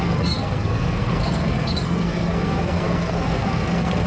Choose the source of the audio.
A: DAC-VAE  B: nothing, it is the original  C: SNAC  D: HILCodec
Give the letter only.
C